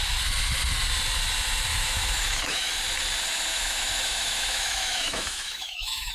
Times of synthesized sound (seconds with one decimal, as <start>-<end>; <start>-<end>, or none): 1.7-2.7; 3.5-6.1